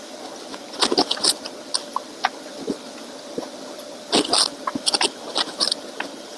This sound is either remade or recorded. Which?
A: recorded